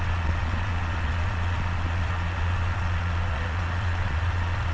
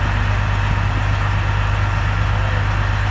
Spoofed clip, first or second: first